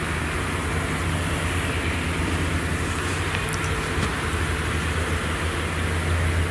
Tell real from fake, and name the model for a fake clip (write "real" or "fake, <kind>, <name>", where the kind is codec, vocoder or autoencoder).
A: real